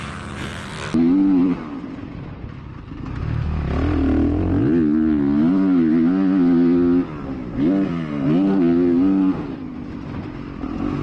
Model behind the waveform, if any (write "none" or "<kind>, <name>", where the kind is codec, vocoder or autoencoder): none